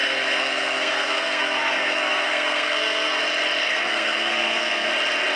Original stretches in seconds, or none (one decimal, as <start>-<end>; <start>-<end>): 3.2-3.6; 4.9-5.4

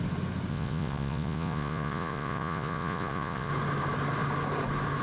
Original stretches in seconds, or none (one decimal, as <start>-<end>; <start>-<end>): 0.0-0.5; 3.5-5.0

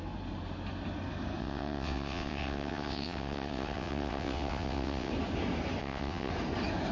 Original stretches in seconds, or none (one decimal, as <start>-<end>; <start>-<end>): 0.0-1.4; 5.1-5.8; 6.3-6.9

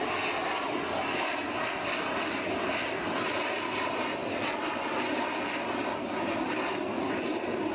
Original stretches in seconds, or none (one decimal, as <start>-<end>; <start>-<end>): 0.0-4.2

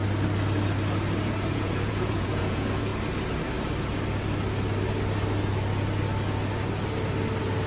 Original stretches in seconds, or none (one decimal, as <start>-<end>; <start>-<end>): 0.0-1.5; 2.9-7.7

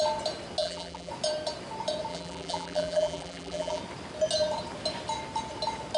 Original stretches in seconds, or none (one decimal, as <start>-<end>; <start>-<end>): 0.0-0.6; 1.1-2.1; 3.8-6.0